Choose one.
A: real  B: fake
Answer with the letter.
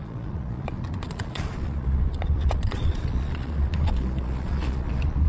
B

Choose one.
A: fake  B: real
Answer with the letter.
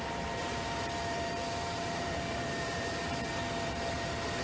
A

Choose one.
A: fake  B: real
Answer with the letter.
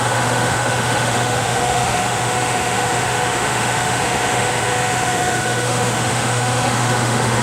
A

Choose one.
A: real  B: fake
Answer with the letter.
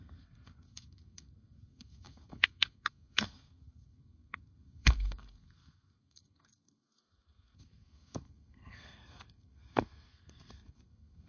B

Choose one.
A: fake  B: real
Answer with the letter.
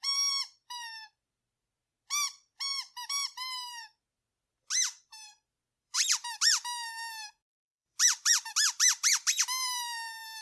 A